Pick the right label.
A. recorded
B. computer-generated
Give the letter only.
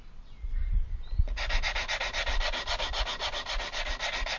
A